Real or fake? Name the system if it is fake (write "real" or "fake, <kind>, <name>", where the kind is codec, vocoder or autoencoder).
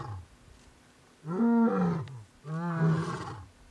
real